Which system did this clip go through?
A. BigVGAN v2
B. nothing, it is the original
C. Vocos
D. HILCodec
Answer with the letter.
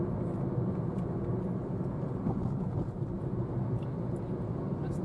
B